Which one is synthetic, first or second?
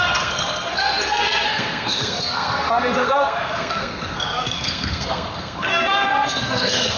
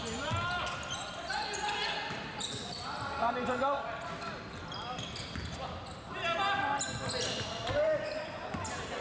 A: first